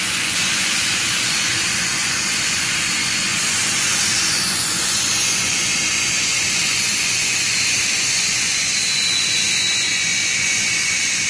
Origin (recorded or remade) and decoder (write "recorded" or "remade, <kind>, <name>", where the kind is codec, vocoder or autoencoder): remade, vocoder, Vocos